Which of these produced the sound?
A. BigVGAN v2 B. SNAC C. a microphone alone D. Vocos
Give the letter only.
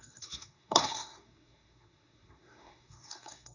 B